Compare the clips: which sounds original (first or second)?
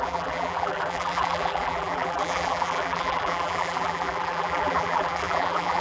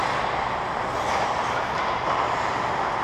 second